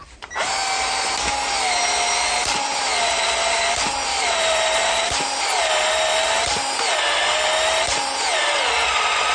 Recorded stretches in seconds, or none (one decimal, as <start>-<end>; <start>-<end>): 0.5-2.4; 6.4-9.3

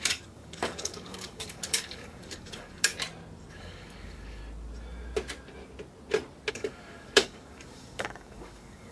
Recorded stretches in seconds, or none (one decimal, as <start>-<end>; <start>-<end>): 2.9-3.5; 4.4-6.5

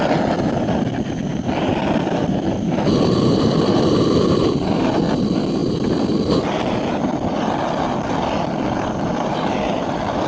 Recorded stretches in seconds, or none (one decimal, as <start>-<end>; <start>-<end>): none

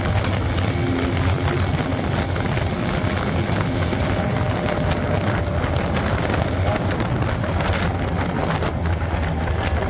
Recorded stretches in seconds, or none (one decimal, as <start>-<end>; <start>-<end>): 0.0-9.9

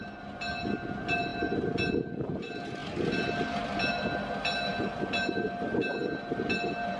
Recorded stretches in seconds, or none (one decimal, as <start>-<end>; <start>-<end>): 0.0-7.0

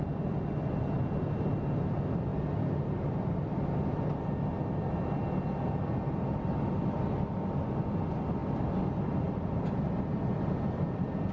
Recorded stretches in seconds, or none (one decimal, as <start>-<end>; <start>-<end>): 0.0-8.4